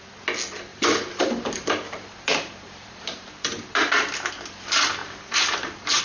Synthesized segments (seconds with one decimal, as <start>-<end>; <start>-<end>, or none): 0.7-4.3; 5.0-6.0